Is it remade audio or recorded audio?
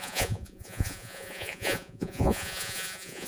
remade